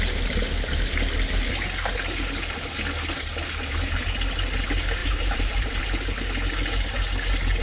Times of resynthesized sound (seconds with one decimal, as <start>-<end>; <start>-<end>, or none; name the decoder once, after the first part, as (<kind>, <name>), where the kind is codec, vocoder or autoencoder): 5.0-5.8 (vocoder, BigVGAN v2)